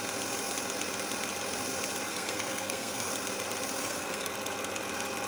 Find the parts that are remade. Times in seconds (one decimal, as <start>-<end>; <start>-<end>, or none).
2.1-3.1; 3.8-4.3